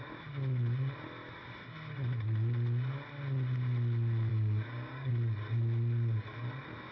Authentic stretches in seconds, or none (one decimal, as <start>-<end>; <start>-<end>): 0.0-4.3; 5.1-6.9